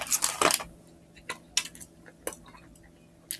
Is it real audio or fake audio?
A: real